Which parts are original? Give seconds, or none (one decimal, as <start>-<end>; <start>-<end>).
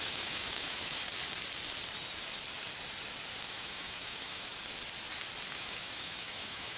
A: 1.0-3.4; 4.5-5.5